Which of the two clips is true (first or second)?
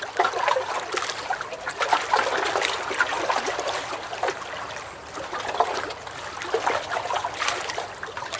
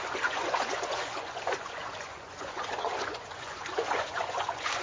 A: first